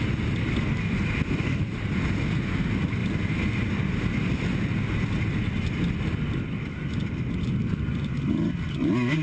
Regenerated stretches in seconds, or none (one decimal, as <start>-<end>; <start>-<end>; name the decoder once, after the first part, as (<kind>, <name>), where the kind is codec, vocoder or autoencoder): none